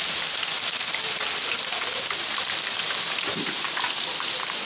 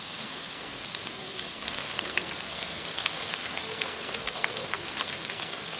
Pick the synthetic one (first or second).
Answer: second